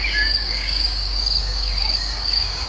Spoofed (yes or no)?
yes